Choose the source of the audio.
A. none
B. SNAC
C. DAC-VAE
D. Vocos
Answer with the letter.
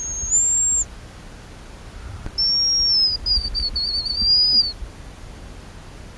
A